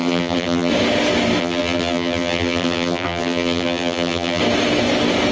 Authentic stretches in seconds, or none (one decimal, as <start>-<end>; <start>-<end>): 0.7-1.4; 4.4-5.3